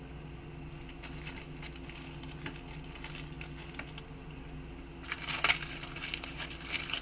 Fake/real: real